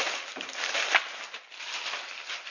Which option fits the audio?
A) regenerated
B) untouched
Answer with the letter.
B